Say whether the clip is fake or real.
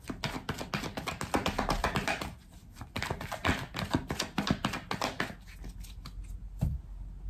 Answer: real